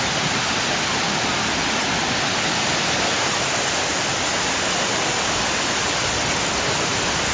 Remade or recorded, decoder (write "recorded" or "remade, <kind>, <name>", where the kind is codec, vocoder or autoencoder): recorded